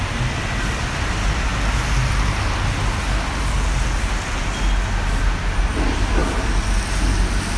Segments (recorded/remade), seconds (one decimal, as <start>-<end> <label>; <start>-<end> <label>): 0.0-7.6 recorded